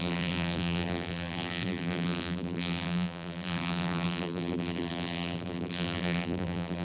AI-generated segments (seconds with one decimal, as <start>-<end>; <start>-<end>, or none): 0.0-6.8